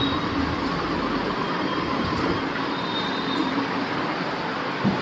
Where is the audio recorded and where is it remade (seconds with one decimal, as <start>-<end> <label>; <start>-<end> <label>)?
0.0-5.0 recorded